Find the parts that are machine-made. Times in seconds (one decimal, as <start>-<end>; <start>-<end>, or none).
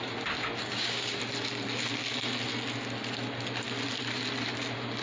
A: 0.6-1.2